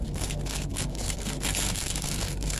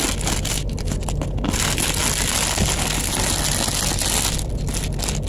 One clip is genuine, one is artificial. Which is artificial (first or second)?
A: first